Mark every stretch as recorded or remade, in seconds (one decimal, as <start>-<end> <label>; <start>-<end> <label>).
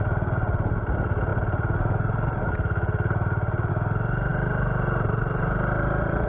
0.0-6.3 recorded